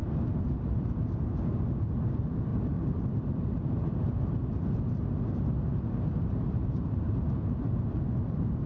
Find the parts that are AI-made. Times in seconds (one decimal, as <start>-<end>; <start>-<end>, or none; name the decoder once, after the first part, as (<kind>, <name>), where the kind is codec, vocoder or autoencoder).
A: 0.0-0.8 (vocoder, BigVGAN v2); 2.5-3.0; 6.1-6.8